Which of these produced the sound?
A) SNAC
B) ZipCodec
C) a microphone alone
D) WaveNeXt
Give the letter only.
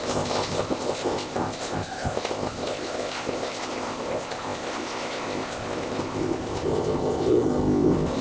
B